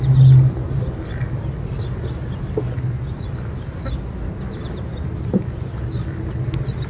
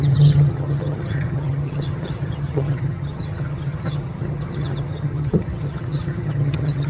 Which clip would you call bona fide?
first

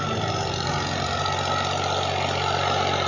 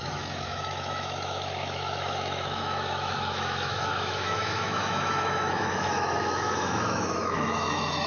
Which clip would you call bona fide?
first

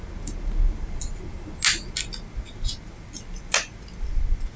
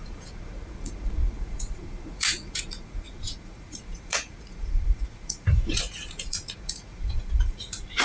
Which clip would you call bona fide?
first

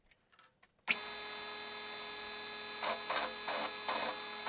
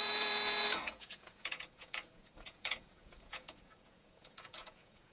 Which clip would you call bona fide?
first